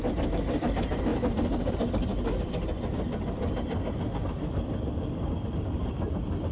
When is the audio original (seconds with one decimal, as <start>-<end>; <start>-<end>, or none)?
0.0-6.5